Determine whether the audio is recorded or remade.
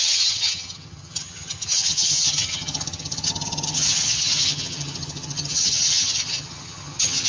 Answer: remade